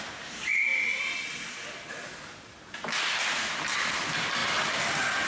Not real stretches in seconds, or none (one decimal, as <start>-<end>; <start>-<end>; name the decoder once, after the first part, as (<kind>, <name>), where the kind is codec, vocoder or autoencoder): none